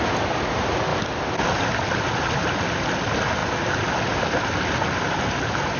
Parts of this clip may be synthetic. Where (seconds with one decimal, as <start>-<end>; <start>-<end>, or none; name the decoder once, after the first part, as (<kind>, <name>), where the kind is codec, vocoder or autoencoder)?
none